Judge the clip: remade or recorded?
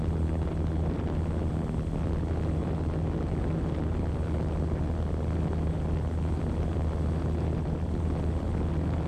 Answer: recorded